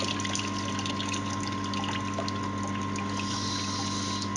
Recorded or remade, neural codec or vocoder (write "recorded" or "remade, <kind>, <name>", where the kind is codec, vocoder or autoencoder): recorded